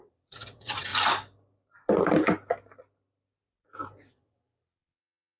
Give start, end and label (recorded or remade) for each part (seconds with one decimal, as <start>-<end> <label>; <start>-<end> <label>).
0.0-0.9 remade; 0.9-4.1 recorded; 4.1-5.4 remade